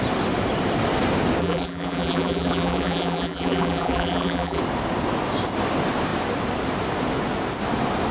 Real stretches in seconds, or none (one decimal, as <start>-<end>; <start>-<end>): 0.0-1.4; 4.6-8.1